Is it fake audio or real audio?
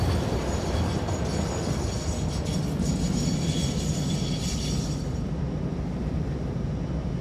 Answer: real